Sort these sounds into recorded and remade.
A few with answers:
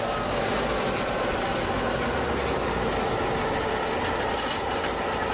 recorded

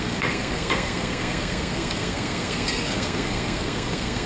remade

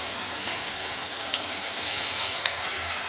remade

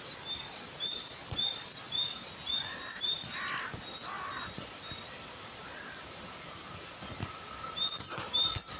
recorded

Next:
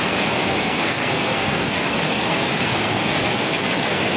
remade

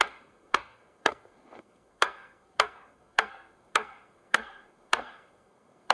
remade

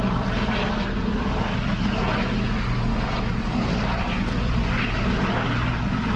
recorded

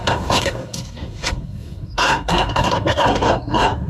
remade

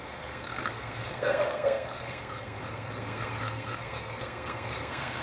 remade